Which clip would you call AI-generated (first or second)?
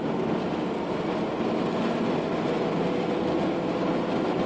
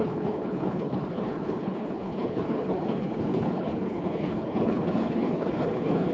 second